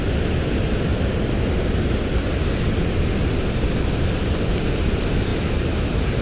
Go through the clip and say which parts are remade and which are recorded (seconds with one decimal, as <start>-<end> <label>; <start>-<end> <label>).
0.0-5.3 recorded; 5.3-6.2 remade